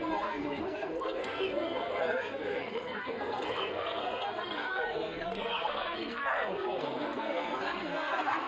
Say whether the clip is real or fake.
fake